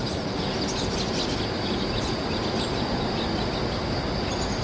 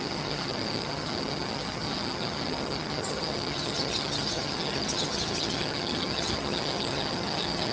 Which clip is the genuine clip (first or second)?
first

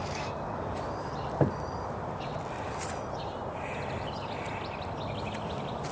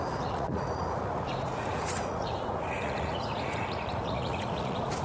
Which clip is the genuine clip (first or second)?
first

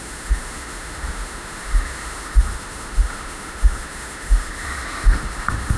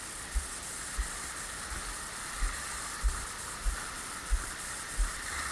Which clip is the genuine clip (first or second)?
second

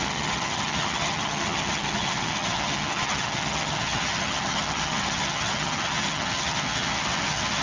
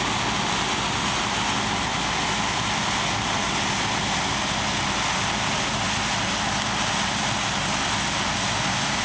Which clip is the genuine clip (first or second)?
second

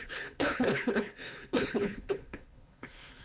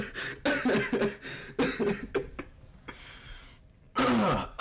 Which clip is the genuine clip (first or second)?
second